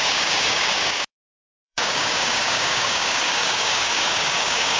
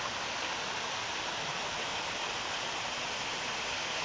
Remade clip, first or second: first